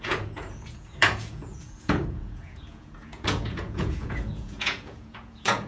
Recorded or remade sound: remade